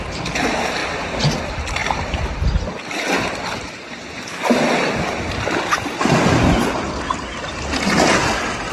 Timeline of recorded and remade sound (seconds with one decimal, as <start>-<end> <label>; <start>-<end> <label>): 0.0-8.7 recorded